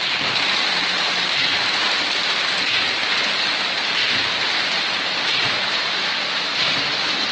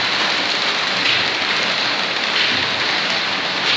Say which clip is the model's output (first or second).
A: first